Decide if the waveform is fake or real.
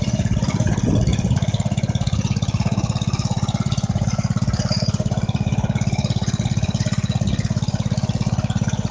real